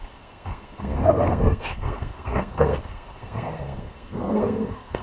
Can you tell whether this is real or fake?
fake